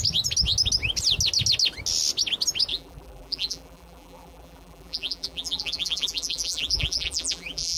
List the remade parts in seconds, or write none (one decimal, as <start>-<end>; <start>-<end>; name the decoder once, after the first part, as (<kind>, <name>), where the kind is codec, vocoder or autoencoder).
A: 2.7-7.8 (vocoder, BigVGAN v2)

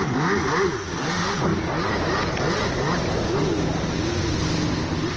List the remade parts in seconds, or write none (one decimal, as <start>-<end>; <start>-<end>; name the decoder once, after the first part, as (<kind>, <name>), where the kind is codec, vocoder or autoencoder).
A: none